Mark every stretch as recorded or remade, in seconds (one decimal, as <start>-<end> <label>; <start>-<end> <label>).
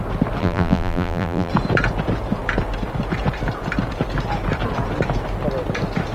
0.0-0.4 recorded; 0.4-1.5 remade; 1.5-6.1 recorded